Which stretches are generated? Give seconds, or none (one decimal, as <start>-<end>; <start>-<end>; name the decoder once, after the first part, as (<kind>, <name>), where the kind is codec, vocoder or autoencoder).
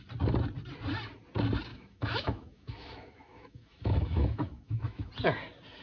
1.7-5.1 (autoencoder, DAC-VAE)